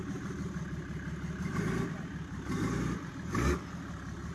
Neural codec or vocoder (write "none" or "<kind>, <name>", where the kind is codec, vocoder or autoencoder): none